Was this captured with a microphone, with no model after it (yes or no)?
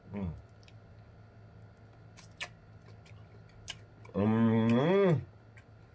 yes